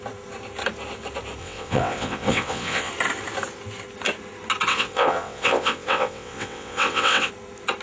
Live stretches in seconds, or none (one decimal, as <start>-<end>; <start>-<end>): 0.0-1.4; 2.9-4.7; 7.3-7.8

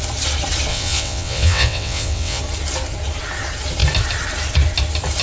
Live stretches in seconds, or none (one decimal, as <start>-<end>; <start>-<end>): 0.0-0.7; 2.4-5.2